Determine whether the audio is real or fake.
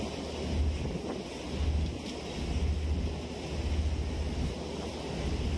real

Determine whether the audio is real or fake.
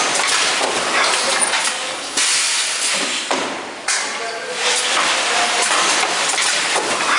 real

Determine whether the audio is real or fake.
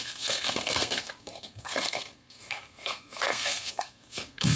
fake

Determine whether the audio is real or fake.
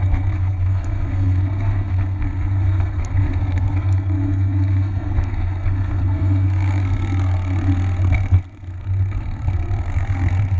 fake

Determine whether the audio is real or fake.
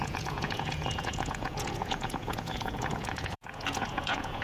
fake